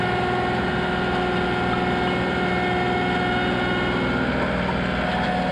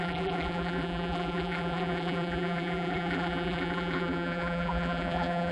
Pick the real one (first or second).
first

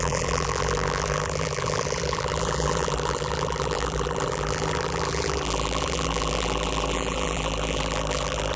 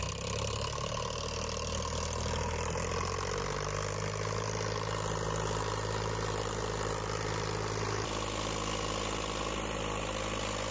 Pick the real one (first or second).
second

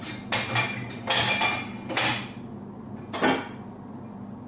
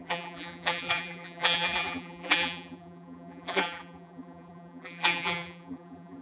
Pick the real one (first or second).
first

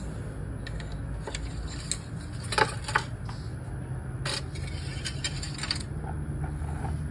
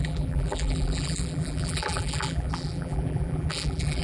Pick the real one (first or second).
first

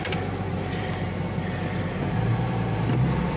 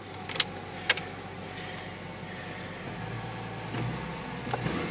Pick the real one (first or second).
second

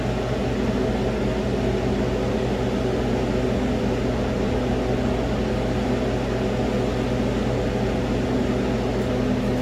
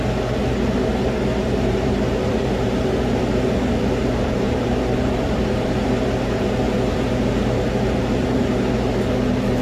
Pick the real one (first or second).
first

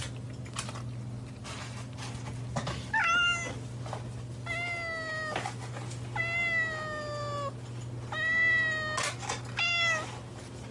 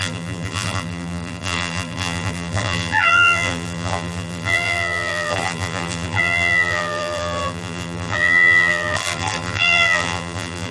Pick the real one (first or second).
first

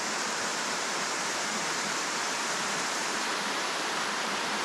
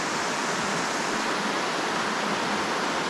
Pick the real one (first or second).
second